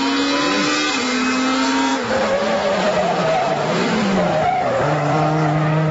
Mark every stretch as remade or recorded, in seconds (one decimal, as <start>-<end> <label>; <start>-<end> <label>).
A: 0.0-1.9 recorded; 1.9-5.4 remade; 5.4-5.9 recorded